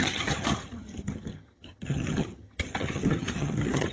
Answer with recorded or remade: remade